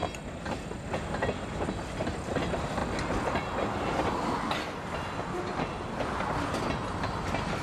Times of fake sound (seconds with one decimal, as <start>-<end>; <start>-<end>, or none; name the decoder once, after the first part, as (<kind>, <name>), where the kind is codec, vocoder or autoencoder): none